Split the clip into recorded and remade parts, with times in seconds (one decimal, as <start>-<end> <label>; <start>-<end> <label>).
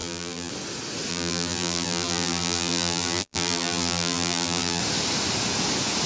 0.0-0.5 remade; 0.5-1.1 recorded; 1.1-4.8 remade; 4.8-6.1 recorded